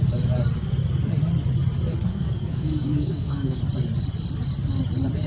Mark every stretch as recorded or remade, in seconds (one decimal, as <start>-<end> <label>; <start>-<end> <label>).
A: 0.0-2.1 recorded; 2.1-3.6 remade; 3.6-5.3 recorded